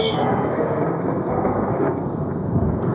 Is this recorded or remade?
remade